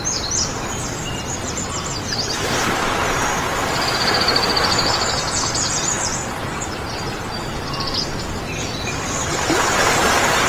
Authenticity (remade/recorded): recorded